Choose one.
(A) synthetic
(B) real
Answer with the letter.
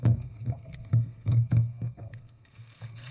A